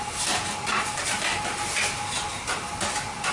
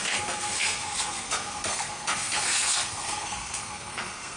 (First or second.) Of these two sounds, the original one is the first